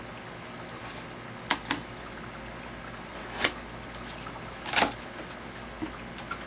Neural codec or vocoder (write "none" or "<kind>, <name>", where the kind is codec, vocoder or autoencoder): none